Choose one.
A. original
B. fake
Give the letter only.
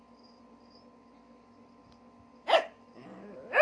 A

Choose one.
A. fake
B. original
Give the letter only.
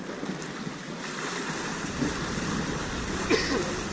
B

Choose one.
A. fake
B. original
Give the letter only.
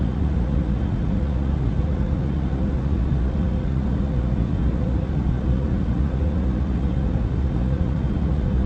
A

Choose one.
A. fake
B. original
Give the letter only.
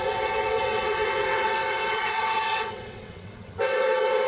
A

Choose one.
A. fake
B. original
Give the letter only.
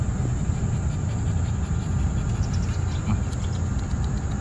B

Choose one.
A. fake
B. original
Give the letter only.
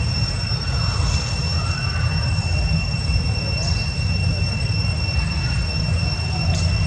B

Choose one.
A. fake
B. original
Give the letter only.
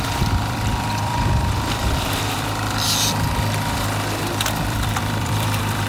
A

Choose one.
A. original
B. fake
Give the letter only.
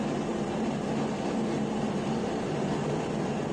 A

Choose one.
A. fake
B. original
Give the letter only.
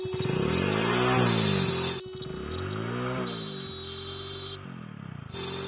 B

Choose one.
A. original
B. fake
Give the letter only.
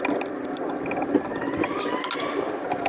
A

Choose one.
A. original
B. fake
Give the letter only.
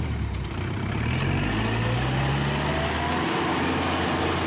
A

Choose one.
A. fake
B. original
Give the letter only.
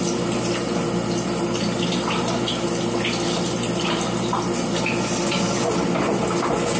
B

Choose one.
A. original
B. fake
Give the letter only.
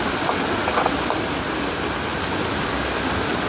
A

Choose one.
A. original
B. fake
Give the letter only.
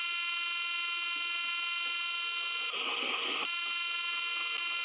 A